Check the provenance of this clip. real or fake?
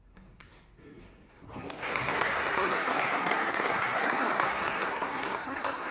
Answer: fake